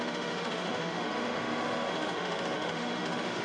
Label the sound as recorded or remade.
remade